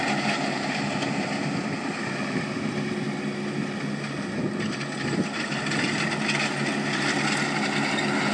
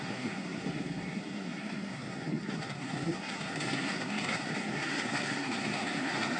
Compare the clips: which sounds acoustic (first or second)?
first